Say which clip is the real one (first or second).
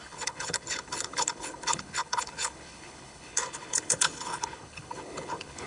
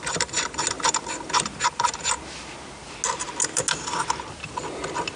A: second